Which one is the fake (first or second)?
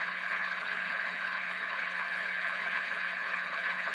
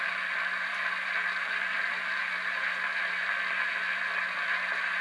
first